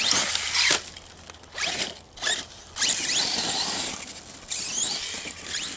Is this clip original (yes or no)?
yes